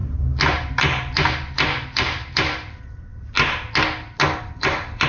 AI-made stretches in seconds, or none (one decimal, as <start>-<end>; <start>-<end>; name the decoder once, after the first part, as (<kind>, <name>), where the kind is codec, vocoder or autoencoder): 0.5-3.1 (vocoder, BigVGAN v2); 4.4-5.1